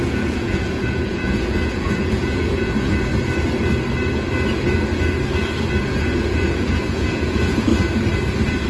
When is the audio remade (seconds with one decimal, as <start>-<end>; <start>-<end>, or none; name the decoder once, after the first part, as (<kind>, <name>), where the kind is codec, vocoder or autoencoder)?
0.0-3.1 (vocoder, Vocos); 5.8-7.7